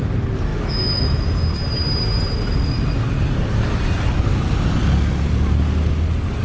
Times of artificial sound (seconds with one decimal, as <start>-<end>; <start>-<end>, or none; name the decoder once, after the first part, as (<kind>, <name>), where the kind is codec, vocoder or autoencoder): 0.5-1.2 (autoencoder, DAC-VAE)